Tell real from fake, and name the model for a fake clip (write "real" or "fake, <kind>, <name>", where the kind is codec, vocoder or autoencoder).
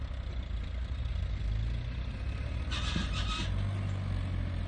real